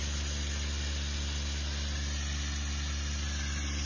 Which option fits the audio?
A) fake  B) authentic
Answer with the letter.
B